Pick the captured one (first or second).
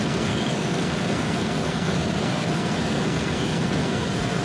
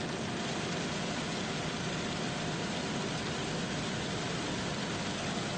second